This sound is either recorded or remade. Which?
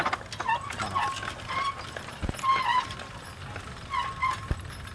recorded